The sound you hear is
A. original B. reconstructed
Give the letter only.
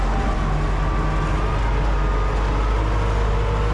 A